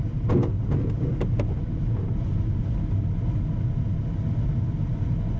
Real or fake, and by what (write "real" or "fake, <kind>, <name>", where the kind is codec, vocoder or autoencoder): real